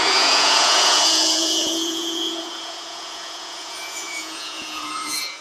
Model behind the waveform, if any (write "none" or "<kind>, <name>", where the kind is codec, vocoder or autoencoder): vocoder, Vocos